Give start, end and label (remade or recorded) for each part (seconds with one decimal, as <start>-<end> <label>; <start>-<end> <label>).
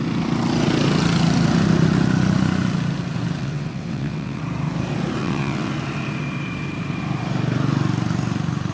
0.0-3.4 recorded; 3.4-4.4 remade; 4.4-5.2 recorded; 5.2-5.7 remade; 5.7-8.7 recorded